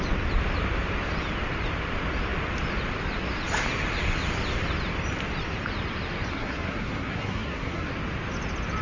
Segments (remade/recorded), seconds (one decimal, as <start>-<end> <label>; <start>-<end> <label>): 0.0-6.3 recorded; 6.3-7.9 remade; 7.9-8.8 recorded